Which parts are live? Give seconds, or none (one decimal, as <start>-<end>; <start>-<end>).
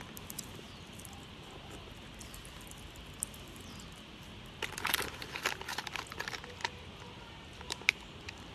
0.0-8.5